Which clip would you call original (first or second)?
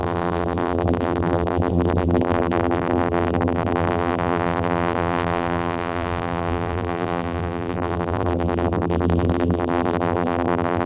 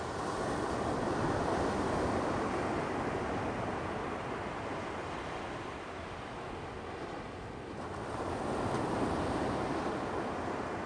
second